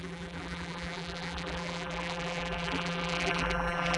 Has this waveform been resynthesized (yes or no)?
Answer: yes